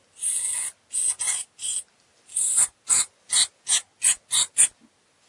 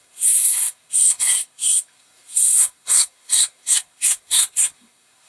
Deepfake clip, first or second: second